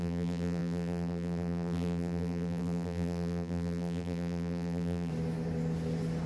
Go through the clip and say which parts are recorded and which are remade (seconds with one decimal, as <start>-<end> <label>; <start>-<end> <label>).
0.0-5.1 remade; 5.1-6.3 recorded